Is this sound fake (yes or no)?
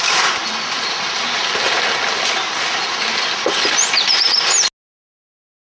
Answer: no